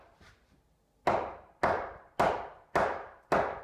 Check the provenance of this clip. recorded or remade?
recorded